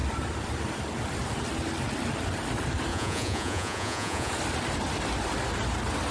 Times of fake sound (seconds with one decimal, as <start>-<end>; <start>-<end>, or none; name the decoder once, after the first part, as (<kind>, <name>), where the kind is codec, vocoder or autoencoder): 2.9-4.3 (vocoder, Vocos)